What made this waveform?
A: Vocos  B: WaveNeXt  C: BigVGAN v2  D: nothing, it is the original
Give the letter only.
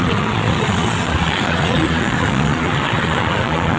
A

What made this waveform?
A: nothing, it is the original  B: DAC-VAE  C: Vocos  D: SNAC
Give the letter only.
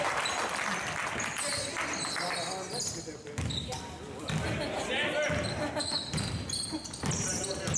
A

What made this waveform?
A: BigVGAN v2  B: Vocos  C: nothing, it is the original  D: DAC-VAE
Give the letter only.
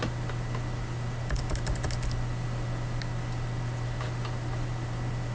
C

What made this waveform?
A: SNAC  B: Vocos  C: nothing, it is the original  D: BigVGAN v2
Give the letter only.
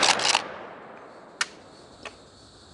C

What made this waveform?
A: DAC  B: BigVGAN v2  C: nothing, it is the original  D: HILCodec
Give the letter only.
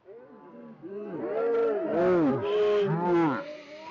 C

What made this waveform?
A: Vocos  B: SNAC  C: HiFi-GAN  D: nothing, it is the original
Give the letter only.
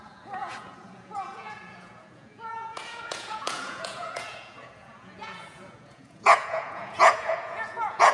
A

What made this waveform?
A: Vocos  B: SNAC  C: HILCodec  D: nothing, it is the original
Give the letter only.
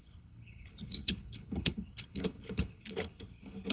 C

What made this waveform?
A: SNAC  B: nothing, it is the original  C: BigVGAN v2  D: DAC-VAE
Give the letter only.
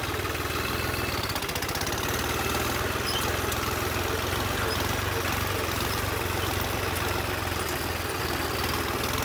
B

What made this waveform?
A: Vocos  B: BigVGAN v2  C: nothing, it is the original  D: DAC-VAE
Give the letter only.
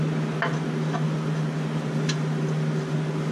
C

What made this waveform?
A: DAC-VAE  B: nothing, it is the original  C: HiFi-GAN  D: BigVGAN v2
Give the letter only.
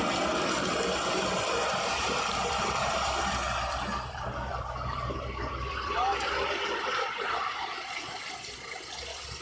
D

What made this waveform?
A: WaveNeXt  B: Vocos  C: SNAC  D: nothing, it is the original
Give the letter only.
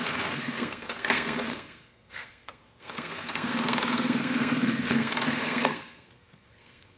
C